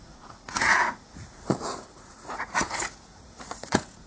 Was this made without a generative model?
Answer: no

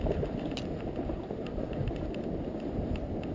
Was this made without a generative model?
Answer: yes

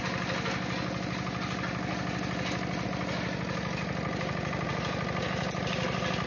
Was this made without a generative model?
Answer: yes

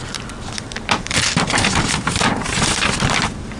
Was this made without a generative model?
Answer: no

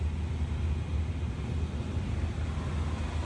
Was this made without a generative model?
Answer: yes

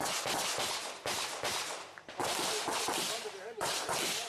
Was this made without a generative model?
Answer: yes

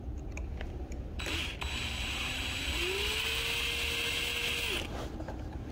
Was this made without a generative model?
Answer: yes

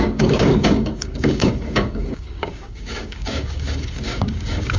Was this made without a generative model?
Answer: no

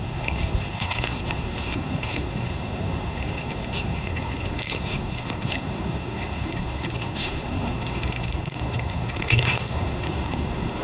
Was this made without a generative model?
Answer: no